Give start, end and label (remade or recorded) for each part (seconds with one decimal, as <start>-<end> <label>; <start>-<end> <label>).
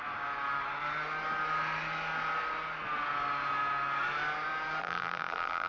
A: 0.0-4.8 recorded; 4.8-5.7 remade